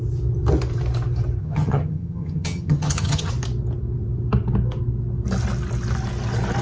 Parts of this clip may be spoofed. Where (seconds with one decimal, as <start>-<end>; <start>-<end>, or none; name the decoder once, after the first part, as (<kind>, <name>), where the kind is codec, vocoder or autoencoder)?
1.4-3.3 (vocoder, HiFi-GAN)